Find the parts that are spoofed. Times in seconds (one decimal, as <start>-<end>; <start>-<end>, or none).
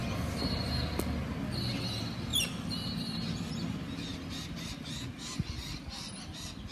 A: none